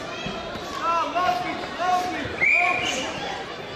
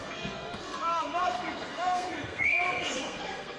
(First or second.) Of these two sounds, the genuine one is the first